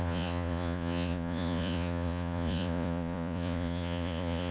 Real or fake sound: fake